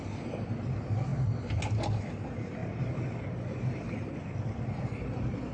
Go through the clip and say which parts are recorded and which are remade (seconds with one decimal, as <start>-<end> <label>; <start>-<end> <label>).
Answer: 0.0-5.5 recorded